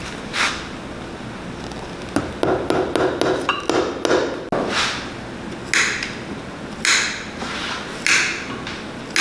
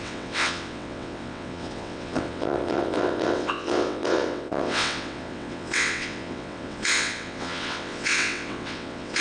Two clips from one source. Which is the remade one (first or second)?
second